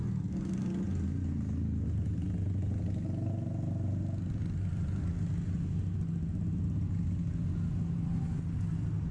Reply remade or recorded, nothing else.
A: recorded